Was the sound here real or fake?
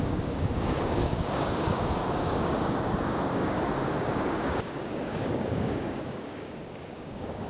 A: fake